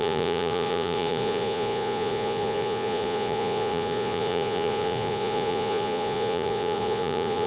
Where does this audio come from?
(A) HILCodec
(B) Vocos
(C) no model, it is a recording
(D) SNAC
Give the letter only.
B